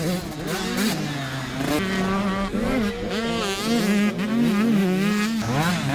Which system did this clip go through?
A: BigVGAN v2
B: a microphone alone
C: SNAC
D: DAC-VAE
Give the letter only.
B